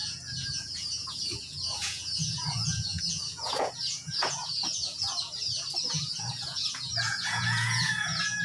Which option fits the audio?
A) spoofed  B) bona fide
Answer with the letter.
A